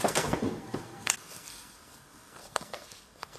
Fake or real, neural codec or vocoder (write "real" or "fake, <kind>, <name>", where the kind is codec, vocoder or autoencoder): fake, codec, SNAC